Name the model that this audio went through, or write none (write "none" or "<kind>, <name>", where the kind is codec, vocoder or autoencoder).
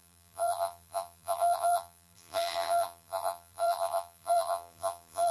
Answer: vocoder, BigVGAN v2